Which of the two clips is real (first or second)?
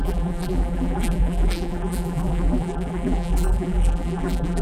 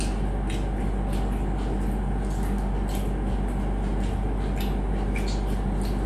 second